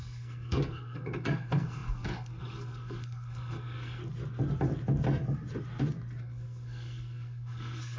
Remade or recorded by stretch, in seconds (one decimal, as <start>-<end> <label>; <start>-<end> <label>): 0.0-4.0 remade; 4.0-6.2 recorded; 6.2-8.0 remade